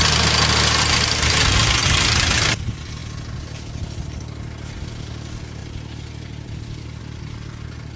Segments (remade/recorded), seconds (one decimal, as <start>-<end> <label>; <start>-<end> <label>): 0.0-5.6 recorded; 5.6-7.0 remade; 7.0-8.0 recorded